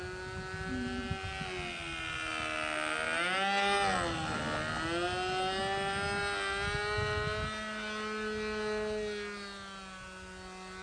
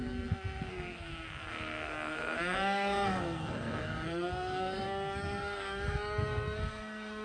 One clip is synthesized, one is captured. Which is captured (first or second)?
first